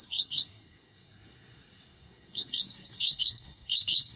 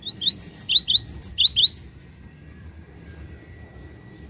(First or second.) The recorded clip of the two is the second